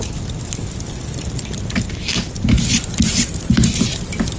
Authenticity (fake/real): real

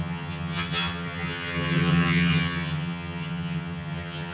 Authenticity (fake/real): fake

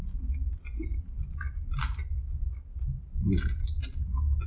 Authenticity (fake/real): real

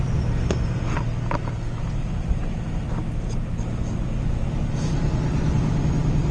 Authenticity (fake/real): real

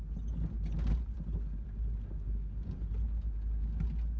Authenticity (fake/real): real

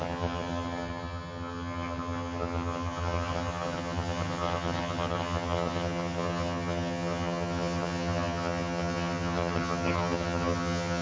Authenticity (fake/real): fake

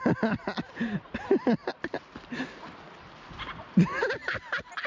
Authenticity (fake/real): real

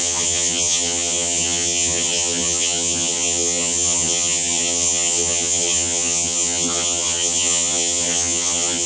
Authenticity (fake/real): fake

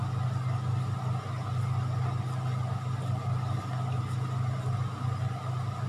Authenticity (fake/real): real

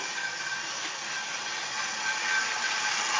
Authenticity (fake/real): real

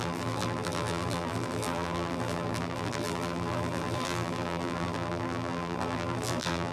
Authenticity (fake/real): fake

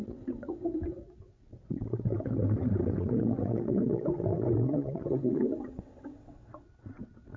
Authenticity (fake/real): fake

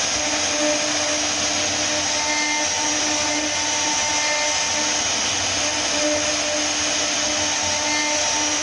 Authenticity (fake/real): real